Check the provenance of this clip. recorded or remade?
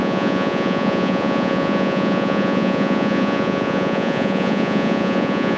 remade